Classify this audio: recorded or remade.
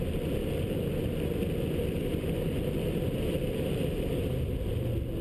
recorded